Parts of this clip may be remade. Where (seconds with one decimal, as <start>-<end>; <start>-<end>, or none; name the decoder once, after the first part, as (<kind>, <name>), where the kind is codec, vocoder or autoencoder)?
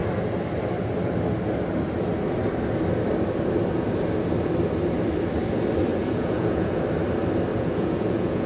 5.9-6.8 (vocoder, Vocos); 7.5-8.5